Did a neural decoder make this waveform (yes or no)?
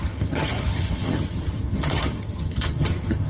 yes